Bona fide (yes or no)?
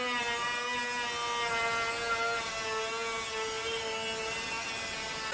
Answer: yes